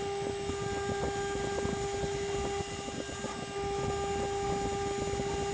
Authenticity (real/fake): real